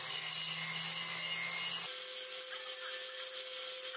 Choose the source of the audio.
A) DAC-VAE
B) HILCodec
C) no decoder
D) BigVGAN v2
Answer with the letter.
C